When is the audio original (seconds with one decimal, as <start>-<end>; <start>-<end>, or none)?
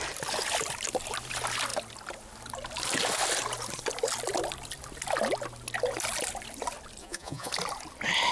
0.0-7.0; 7.5-8.3